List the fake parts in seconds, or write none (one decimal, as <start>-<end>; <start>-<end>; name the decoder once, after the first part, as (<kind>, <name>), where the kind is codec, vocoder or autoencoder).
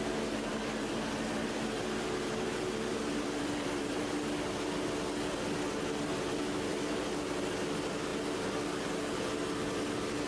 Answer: 0.5-4.0 (vocoder, BigVGAN v2); 6.7-7.5